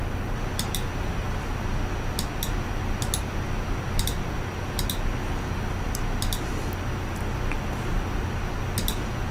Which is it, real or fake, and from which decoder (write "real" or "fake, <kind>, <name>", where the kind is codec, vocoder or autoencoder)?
real